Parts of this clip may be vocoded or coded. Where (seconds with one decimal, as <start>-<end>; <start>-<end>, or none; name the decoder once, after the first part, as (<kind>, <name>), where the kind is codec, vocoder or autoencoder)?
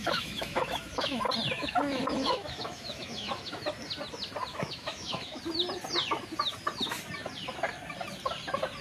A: 0.0-1.2 (autoencoder, DAC-VAE); 1.6-3.6; 4.5-5.4